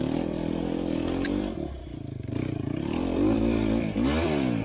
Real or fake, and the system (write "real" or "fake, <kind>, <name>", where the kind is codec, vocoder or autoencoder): fake, vocoder, BigVGAN v2